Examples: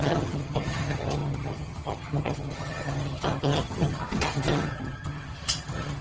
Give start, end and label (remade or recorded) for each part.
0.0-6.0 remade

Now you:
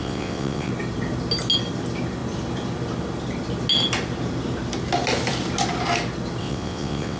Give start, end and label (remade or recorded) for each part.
0.0-0.7 remade; 0.7-6.4 recorded; 6.4-7.2 remade

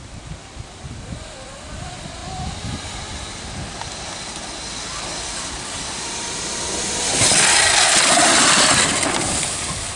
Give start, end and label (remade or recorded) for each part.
0.0-10.0 recorded